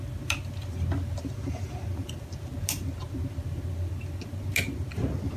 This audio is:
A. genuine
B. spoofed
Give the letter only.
A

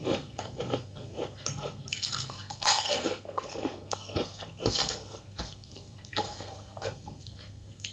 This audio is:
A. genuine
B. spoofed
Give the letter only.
B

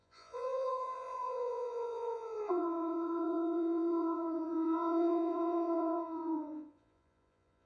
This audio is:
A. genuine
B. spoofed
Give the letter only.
B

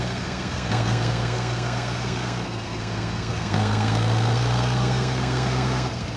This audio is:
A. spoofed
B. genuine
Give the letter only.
A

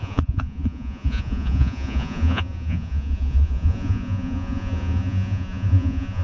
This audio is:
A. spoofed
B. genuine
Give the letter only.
A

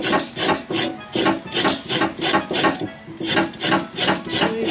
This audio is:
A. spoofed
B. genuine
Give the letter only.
B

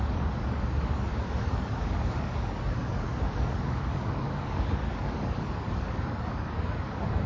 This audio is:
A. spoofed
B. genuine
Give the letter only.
A